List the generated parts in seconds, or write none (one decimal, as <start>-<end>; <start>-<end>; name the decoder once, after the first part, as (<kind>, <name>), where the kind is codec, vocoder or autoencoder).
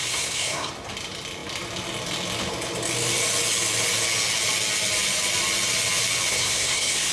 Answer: 0.0-0.7 (codec, SNAC); 6.3-7.1